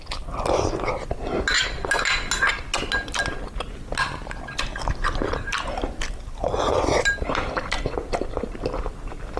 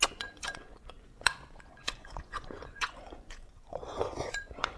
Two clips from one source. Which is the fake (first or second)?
second